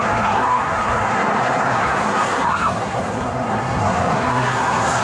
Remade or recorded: remade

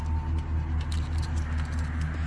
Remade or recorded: recorded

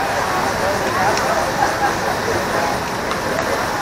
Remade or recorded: recorded